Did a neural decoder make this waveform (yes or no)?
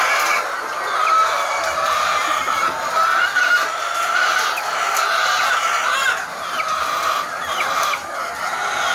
no